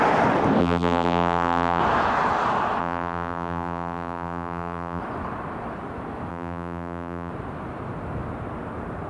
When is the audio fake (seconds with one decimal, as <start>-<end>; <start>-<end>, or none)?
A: 0.6-1.8; 2.8-5.0; 6.3-7.3